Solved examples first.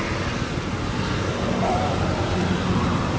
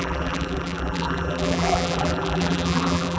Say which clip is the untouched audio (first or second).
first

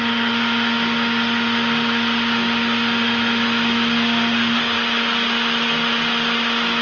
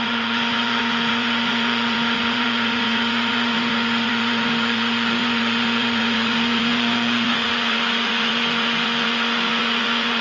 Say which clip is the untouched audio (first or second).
first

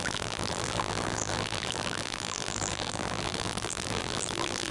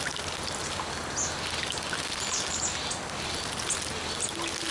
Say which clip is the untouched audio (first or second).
second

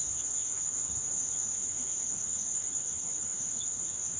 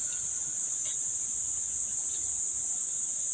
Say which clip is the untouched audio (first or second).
second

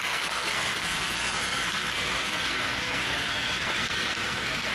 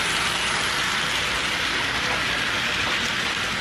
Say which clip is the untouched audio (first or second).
second